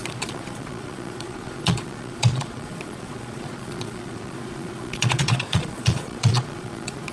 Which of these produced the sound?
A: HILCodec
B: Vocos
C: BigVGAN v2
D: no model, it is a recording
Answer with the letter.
B